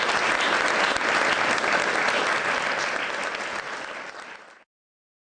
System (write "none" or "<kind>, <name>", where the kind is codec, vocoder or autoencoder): none